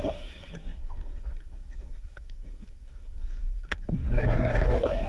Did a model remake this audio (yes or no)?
yes